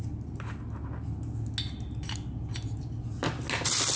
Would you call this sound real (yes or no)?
yes